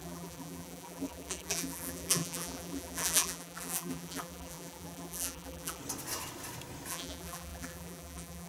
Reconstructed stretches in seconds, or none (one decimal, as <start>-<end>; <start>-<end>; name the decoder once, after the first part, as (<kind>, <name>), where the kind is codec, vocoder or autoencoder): 0.0-5.8 (vocoder, BigVGAN v2); 6.9-8.5